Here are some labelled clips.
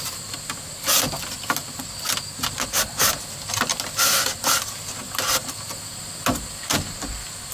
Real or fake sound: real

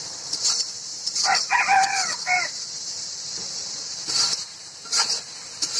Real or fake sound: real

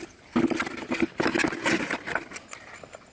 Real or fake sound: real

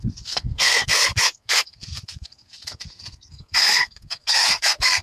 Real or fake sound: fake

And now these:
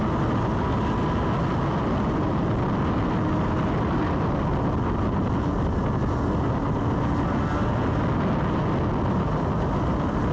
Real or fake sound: real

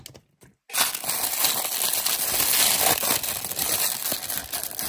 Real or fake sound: real